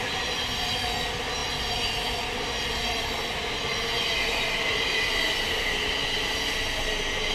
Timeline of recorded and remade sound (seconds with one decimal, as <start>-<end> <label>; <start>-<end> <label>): 0.0-4.7 recorded; 4.7-5.9 remade; 5.9-7.3 recorded